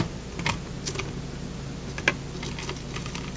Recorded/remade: recorded